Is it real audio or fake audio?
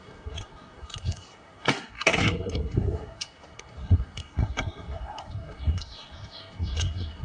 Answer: fake